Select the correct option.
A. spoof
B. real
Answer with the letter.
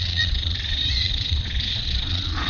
A